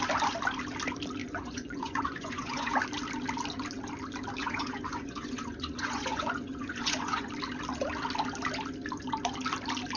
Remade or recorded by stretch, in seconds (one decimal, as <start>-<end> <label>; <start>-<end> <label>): 0.0-1.2 recorded; 1.2-2.7 remade; 2.7-4.4 recorded; 4.4-7.3 remade; 7.3-10.0 recorded